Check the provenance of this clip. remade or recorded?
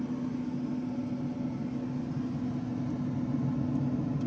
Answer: recorded